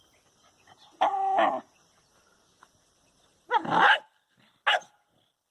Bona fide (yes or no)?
yes